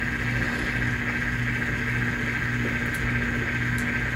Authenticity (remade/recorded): recorded